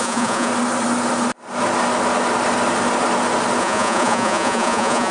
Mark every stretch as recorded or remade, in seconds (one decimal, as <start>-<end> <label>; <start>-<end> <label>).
0.0-0.5 remade; 0.5-3.6 recorded; 3.6-5.1 remade